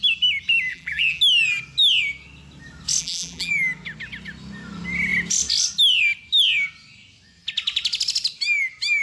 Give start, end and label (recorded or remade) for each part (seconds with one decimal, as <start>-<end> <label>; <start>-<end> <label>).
0.0-0.7 recorded; 0.7-1.2 remade; 1.2-3.0 recorded; 3.0-3.5 remade; 3.5-9.0 recorded

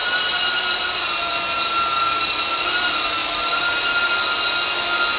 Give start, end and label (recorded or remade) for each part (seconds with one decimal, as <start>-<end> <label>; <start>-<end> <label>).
0.0-1.0 remade; 1.0-3.2 recorded; 3.2-4.0 remade; 4.0-5.2 recorded

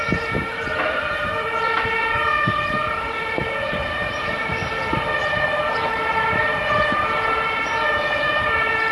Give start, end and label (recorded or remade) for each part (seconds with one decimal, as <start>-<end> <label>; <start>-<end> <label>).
0.0-8.9 remade

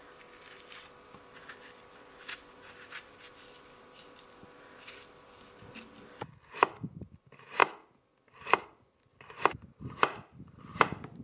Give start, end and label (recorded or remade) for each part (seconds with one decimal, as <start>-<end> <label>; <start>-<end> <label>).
0.0-11.2 recorded

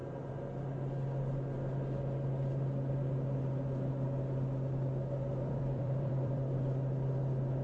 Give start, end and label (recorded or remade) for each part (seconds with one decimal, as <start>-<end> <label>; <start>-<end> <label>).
0.0-5.3 recorded; 5.3-6.5 remade; 6.5-7.6 recorded

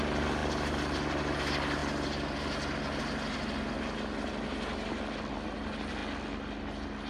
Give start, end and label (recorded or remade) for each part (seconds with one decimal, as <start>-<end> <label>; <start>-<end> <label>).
0.0-7.1 recorded

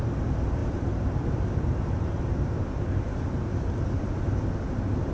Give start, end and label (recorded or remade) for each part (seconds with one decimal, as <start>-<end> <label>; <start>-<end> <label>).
0.0-0.6 recorded; 0.6-3.2 remade; 3.2-5.1 recorded